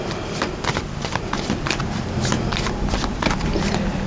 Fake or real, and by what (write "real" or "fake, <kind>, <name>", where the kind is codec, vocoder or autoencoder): fake, vocoder, BigVGAN v2